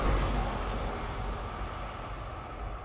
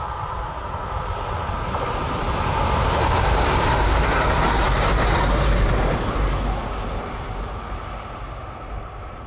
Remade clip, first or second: second